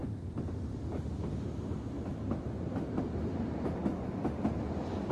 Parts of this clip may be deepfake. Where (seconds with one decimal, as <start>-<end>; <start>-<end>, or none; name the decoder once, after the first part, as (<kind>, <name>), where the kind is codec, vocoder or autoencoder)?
0.0-1.1 (vocoder, BigVGAN v2)